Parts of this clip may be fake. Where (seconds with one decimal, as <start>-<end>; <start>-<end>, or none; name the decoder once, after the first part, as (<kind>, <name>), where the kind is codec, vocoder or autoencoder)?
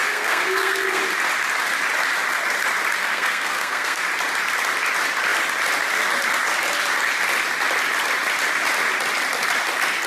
0.0-1.0 (codec, SNAC); 3.0-4.0